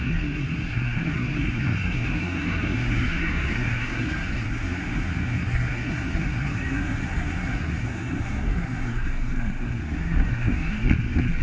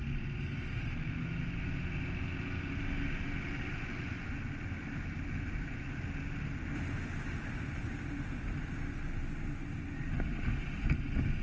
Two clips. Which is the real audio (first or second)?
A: second